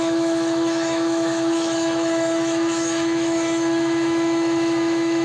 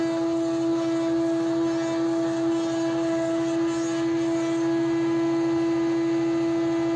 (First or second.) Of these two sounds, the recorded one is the second